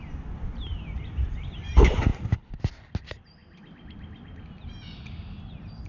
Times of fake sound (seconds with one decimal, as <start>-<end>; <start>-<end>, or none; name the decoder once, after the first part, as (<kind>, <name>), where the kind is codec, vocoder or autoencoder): none